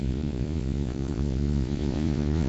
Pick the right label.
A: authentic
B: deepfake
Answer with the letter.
B